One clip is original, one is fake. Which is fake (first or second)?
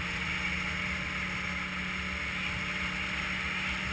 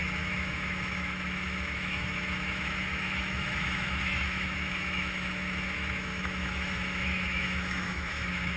second